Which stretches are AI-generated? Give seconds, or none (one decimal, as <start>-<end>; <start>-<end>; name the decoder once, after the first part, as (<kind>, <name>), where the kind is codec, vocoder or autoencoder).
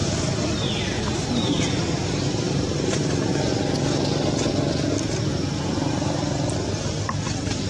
1.7-3.3 (vocoder, BigVGAN v2); 5.9-7.7